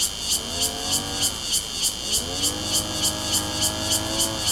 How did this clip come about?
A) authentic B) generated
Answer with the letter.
A